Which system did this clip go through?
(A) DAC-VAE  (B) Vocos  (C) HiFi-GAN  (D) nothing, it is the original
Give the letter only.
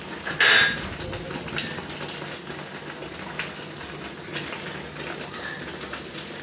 D